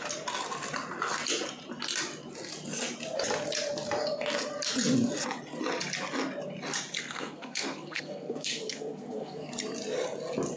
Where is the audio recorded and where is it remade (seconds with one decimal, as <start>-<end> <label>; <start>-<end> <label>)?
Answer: 0.0-7.0 recorded; 7.0-9.5 remade; 9.5-10.6 recorded